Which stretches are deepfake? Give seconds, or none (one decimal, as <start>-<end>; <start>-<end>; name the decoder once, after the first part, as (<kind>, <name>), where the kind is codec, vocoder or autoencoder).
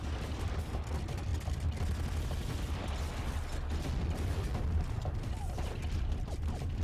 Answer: 0.0-1.3 (vocoder, BigVGAN v2); 3.8-4.5; 6.3-6.8